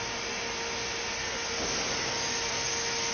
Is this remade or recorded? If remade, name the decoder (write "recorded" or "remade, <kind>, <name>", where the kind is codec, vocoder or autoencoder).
recorded